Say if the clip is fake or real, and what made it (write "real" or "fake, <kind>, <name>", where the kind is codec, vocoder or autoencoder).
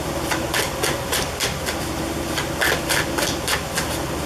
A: real